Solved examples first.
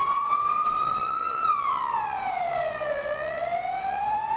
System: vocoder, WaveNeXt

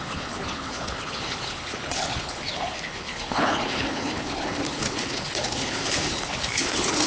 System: codec, HILCodec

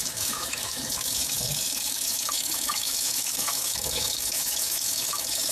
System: autoencoder, DAC-VAE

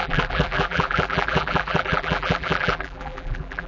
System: vocoder, BigVGAN v2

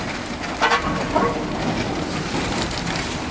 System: none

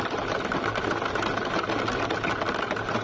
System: none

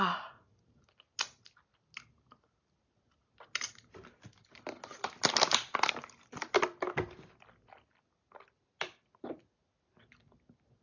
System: none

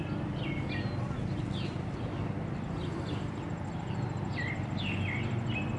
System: none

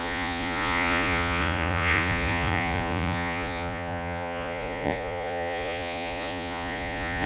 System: vocoder, Vocos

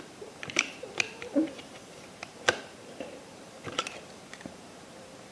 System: vocoder, BigVGAN v2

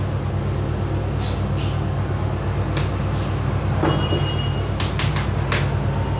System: none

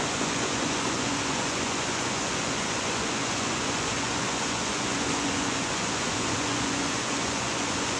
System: vocoder, Vocos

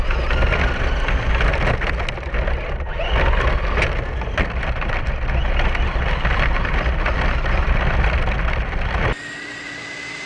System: none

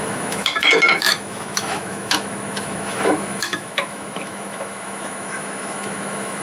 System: autoencoder, DAC-VAE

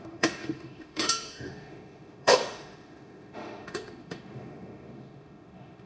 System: autoencoder, DAC-VAE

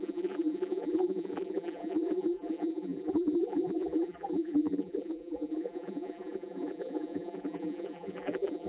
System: vocoder, BigVGAN v2